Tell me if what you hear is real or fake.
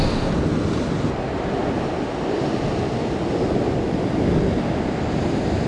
real